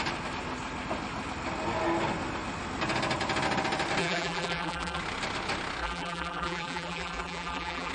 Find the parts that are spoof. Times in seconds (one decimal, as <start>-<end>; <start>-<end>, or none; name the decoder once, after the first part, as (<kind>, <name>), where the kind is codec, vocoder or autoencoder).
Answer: 4.0-5.0 (vocoder, BigVGAN v2); 5.8-7.9